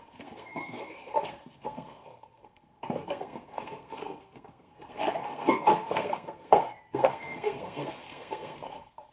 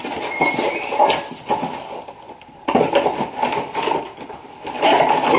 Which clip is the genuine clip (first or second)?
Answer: second